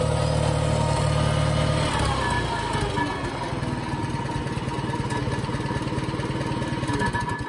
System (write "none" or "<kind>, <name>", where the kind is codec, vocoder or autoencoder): none